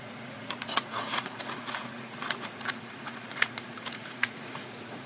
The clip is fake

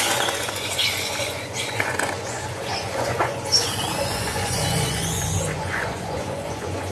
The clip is fake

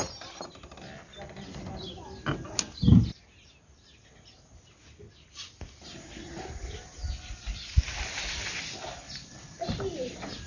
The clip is real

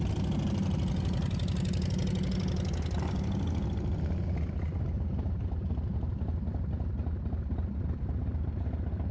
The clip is real